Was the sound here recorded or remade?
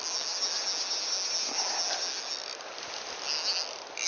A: recorded